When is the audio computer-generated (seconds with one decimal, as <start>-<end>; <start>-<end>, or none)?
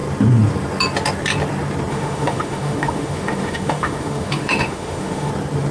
1.9-5.3